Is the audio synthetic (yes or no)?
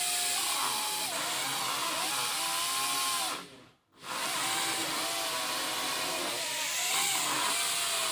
no